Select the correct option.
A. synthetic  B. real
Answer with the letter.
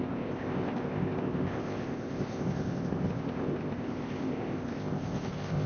A